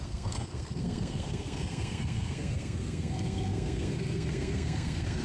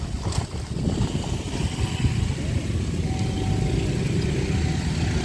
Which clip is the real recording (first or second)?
second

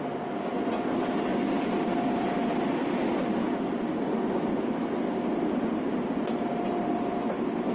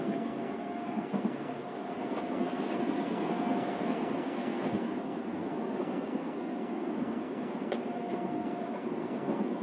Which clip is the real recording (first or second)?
first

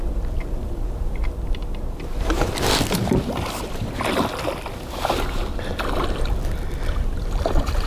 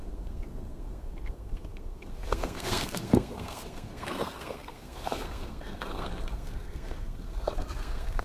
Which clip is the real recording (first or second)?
first